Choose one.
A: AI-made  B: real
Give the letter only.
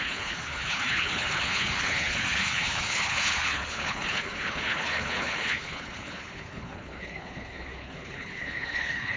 A